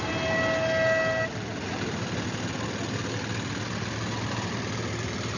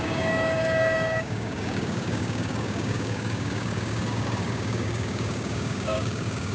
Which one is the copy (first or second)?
second